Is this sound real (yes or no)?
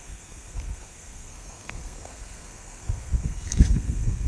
no